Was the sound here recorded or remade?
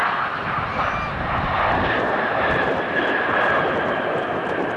recorded